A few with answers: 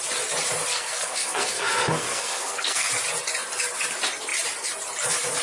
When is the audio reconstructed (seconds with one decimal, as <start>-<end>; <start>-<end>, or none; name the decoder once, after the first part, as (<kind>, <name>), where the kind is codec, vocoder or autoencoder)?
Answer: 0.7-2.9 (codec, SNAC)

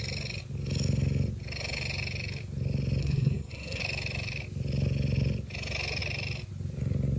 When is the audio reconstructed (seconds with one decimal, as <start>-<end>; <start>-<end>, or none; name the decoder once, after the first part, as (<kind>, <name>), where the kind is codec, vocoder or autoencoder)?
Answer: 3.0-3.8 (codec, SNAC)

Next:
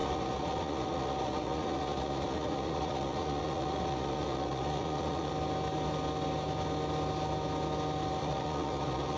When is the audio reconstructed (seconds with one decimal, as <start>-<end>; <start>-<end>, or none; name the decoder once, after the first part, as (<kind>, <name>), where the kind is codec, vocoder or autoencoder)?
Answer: 0.0-5.3 (vocoder, Vocos); 8.2-9.2